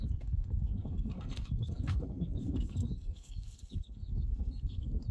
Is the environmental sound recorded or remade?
remade